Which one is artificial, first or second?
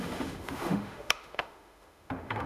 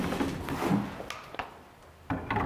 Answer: first